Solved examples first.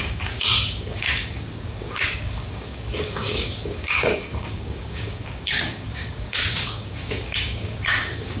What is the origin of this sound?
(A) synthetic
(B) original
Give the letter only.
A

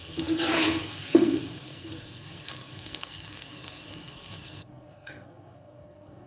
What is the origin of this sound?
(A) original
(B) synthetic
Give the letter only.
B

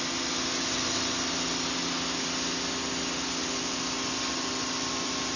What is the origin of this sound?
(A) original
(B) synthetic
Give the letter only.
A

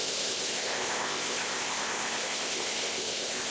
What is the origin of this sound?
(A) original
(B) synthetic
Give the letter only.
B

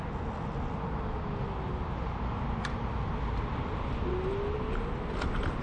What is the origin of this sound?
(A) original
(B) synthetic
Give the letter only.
A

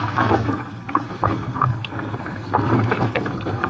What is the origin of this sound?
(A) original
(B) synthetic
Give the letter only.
B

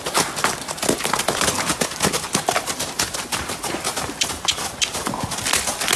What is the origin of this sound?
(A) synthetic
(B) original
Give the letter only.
B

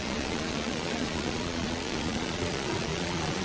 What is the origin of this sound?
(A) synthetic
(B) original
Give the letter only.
A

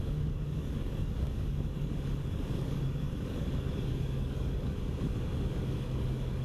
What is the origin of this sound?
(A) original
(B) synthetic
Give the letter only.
B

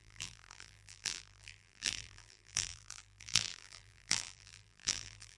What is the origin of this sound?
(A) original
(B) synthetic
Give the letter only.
B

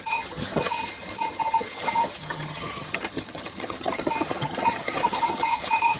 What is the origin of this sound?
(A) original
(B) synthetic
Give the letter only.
B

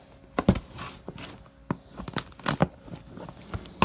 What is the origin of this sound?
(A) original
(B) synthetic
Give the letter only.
A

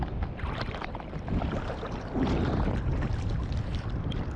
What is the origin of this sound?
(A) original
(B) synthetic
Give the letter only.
B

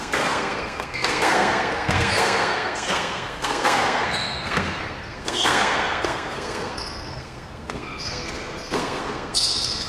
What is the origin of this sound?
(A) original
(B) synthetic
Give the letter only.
B